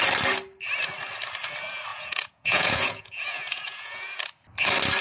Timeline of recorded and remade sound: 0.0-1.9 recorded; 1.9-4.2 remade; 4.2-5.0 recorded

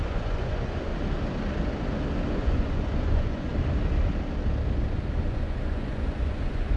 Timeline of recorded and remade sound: 0.0-0.9 remade; 0.9-2.3 recorded; 2.3-3.5 remade; 3.5-5.2 recorded; 5.2-6.8 remade

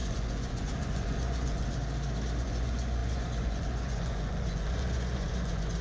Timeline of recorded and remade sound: 0.0-1.8 remade; 1.8-2.4 recorded; 2.4-5.8 remade

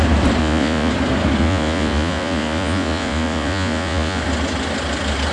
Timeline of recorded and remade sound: 0.0-0.4 recorded; 0.4-0.9 remade; 0.9-1.4 recorded; 1.4-4.2 remade; 4.2-5.3 recorded

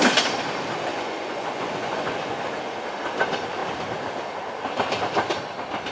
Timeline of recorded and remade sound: 0.0-0.9 recorded; 0.9-2.5 remade; 2.5-5.9 recorded

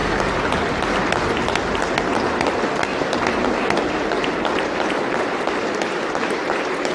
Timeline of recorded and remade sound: 0.0-6.9 recorded

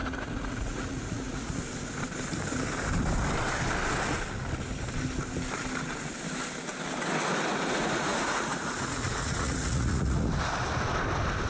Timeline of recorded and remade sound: 0.0-1.6 remade; 1.6-7.5 recorded; 7.5-10.3 remade; 10.3-11.5 recorded

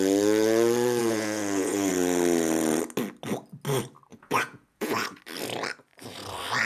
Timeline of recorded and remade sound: 0.0-1.0 recorded; 1.0-1.9 remade; 1.9-4.1 recorded; 4.1-5.2 remade; 5.2-6.7 recorded